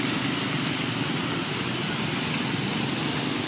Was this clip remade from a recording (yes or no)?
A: no